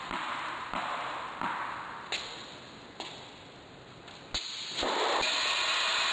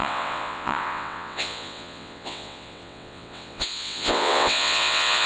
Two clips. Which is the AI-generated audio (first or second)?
second